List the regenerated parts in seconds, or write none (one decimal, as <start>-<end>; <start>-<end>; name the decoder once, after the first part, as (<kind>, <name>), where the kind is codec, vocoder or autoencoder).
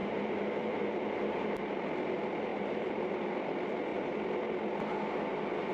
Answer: 0.0-1.6 (vocoder, BigVGAN v2); 2.5-3.1